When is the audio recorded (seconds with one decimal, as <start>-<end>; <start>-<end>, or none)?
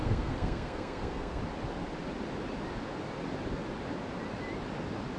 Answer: 1.4-5.2